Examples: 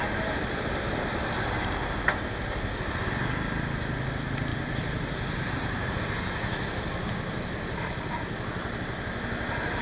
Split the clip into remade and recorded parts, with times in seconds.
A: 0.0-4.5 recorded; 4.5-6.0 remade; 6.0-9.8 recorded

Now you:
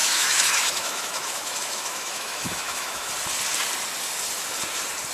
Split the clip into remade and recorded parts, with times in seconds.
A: 0.0-3.1 remade; 3.1-5.1 recorded

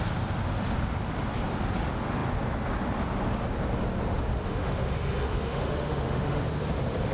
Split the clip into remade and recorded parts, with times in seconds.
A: 0.0-4.3 recorded; 4.3-6.4 remade; 6.4-7.1 recorded

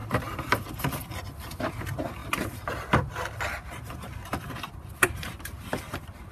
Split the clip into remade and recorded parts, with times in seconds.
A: 0.0-2.2 recorded; 2.2-6.3 remade